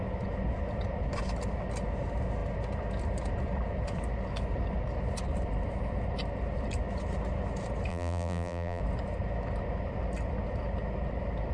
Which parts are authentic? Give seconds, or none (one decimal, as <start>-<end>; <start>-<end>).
0.0-7.9; 8.8-11.5